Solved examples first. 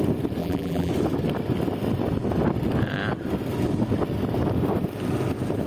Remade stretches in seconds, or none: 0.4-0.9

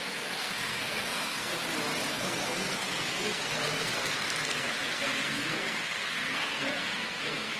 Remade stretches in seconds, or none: 0.0-1.5; 2.1-7.6

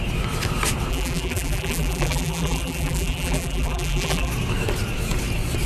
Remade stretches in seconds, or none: 0.9-4.3

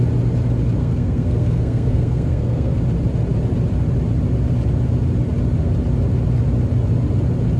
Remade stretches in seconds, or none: 0.8-2.8

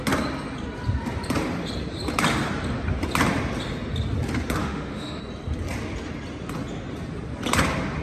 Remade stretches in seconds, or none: 4.6-5.2

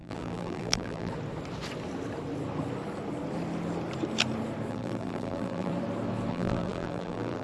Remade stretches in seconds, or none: 0.0-1.1; 4.7-5.7; 6.3-7.4